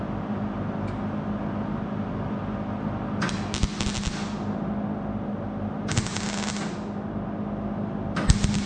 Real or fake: real